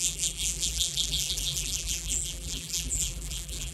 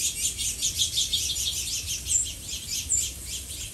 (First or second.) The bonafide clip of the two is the second